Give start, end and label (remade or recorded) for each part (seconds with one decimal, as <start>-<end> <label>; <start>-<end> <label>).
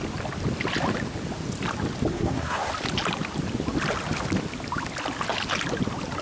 0.0-2.1 recorded; 2.1-2.7 remade; 2.7-6.2 recorded